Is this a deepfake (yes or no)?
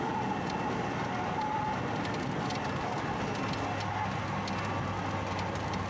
no